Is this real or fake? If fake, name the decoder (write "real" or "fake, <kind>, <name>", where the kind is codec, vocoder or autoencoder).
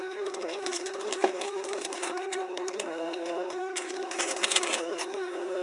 fake, codec, SNAC